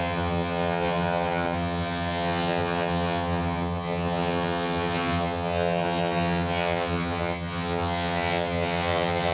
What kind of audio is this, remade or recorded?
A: remade